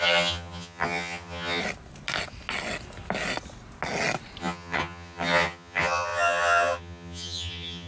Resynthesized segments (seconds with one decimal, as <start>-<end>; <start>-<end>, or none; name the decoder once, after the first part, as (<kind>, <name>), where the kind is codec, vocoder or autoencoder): 0.0-1.6 (vocoder, HiFi-GAN); 4.4-7.9